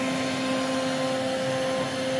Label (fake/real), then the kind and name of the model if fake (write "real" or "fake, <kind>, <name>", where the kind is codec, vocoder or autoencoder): real